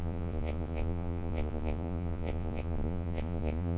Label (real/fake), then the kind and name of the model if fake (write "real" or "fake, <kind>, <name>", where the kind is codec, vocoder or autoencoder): fake, vocoder, Vocos